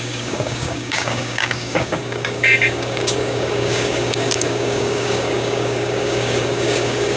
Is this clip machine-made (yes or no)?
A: yes